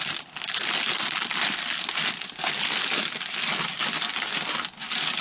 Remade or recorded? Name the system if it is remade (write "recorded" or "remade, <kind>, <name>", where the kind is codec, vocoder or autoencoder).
recorded